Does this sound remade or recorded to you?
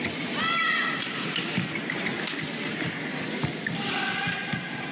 recorded